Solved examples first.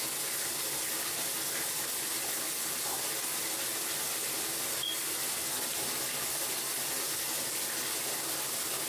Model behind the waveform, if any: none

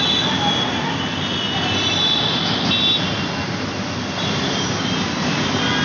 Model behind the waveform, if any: none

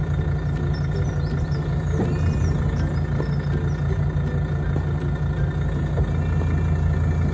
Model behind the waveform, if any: none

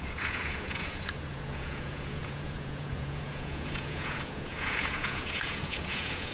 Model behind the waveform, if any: vocoder, Vocos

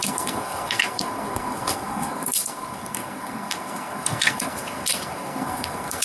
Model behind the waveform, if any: codec, SNAC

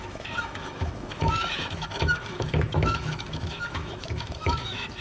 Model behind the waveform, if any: autoencoder, DAC-VAE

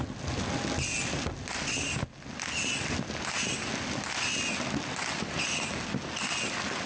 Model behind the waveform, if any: none